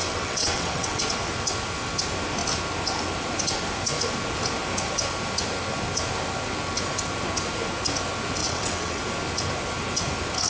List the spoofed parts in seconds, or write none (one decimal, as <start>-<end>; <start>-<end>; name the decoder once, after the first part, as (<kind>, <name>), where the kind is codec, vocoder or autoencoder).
0.0-1.0 (vocoder, WaveNeXt); 8.4-9.0